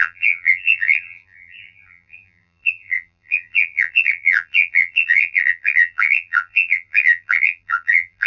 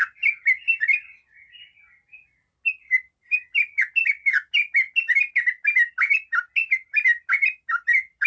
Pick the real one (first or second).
second